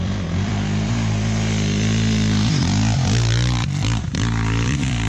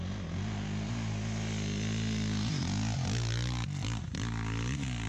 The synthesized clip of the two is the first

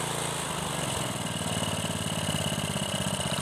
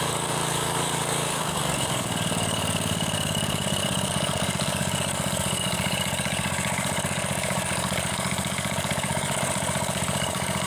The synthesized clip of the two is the second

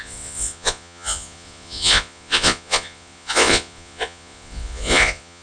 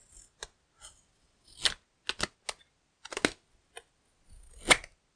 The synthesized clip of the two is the first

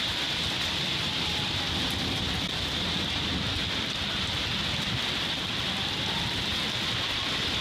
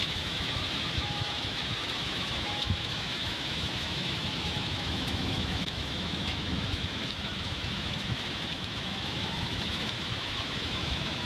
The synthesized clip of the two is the second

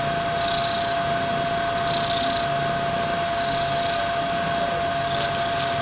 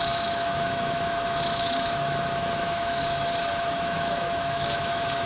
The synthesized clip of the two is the second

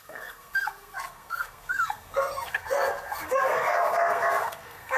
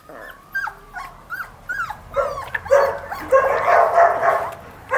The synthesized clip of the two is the first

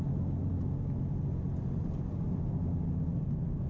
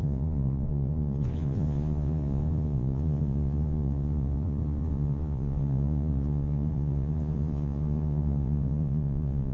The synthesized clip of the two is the second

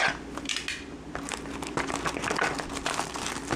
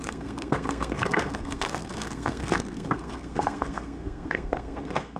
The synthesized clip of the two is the second